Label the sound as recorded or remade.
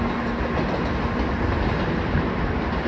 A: recorded